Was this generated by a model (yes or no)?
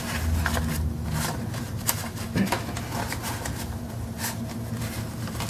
no